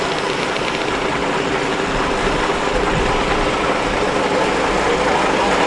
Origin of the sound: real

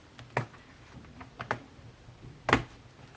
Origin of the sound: real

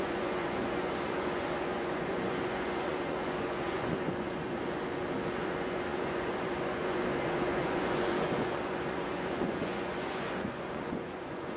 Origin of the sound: fake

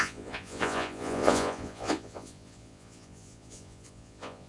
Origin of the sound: fake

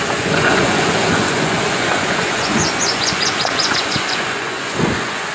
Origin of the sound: fake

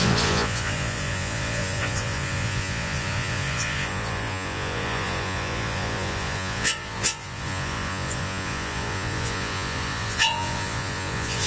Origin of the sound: fake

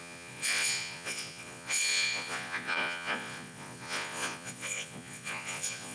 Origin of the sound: fake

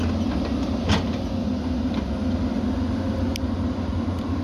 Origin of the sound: real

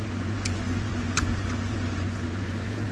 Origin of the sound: fake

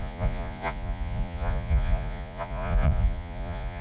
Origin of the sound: fake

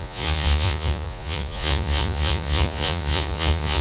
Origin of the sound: fake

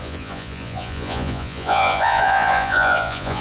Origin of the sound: fake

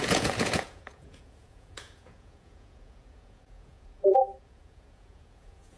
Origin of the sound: fake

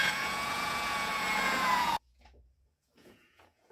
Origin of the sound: fake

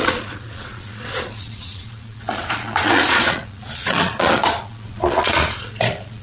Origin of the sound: fake